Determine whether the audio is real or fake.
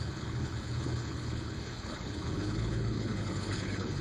fake